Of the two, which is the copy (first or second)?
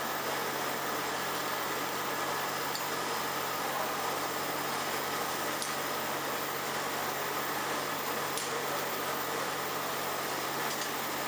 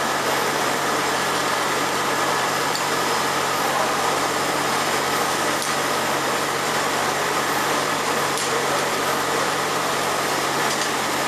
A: second